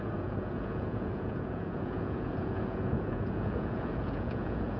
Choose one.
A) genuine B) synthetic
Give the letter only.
B